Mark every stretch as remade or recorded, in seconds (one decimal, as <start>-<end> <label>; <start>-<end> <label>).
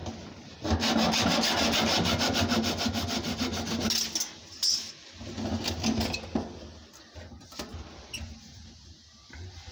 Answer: 0.0-9.7 recorded